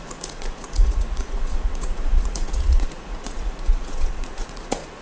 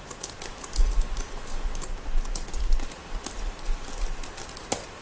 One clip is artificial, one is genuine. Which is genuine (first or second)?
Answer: second